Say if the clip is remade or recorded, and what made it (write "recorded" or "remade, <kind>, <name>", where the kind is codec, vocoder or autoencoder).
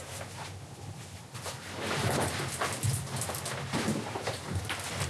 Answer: recorded